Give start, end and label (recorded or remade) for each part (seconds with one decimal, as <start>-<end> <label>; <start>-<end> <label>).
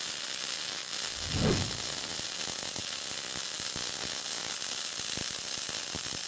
0.0-6.3 recorded